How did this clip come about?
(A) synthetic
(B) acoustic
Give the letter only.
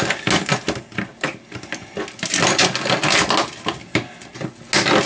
B